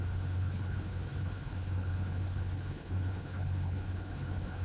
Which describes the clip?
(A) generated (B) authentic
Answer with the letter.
A